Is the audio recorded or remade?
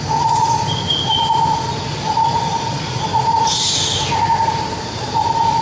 recorded